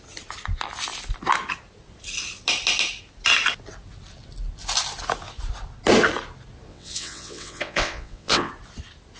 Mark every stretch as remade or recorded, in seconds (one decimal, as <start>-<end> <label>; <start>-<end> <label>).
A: 0.0-6.7 recorded; 6.7-8.5 remade; 8.5-9.2 recorded